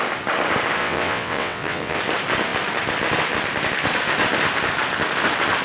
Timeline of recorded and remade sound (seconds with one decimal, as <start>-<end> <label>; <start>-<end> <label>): 0.0-0.8 recorded; 0.8-2.0 remade; 2.0-5.6 recorded